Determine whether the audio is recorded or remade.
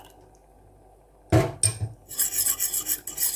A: recorded